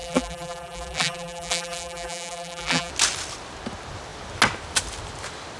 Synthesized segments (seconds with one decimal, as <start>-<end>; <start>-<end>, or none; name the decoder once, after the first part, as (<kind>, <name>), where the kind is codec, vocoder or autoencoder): 0.0-2.9 (vocoder, BigVGAN v2)

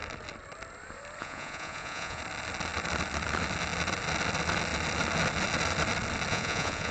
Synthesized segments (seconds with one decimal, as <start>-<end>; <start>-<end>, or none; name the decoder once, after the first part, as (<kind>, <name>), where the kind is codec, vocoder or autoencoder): 1.2-2.2 (vocoder, Vocos); 6.3-6.9

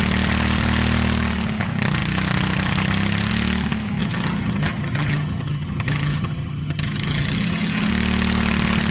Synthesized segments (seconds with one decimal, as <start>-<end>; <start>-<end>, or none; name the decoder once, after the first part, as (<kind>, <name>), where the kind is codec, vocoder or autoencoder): 4.0-7.9 (vocoder, HiFi-GAN)

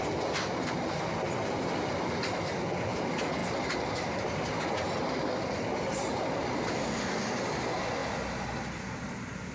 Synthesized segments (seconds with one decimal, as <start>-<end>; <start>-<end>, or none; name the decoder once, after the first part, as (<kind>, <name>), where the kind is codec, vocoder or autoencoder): none

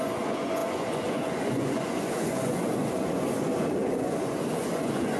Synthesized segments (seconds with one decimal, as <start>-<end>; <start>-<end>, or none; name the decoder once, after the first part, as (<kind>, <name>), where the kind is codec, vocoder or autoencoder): 0.0-5.2 (vocoder, Vocos)